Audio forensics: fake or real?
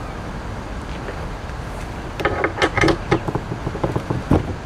real